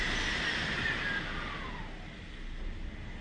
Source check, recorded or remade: recorded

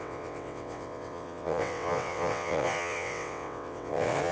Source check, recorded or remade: remade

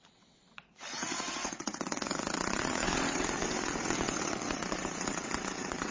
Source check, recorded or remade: remade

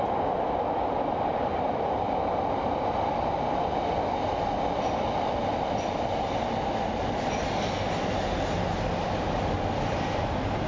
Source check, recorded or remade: recorded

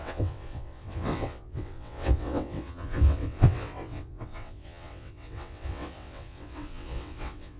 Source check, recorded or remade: remade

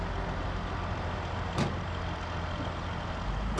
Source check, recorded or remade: recorded